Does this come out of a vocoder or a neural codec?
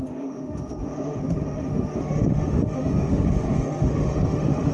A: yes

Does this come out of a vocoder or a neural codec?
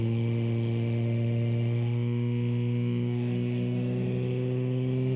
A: yes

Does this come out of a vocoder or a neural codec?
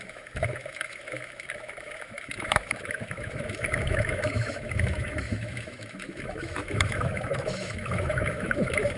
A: yes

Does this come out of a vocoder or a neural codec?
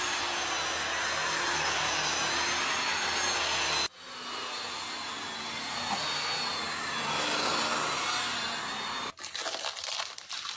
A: no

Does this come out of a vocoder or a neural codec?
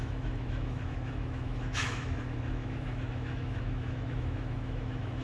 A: yes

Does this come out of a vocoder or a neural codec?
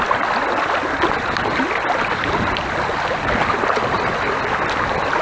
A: no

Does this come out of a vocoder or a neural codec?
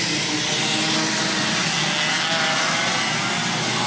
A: no